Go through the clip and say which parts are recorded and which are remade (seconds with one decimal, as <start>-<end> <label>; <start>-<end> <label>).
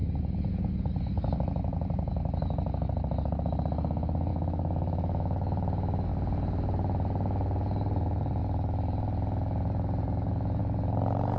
0.0-4.3 recorded; 4.3-6.1 remade; 6.1-11.4 recorded